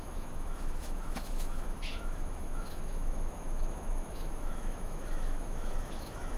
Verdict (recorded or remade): remade